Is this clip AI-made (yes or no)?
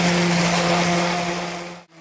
no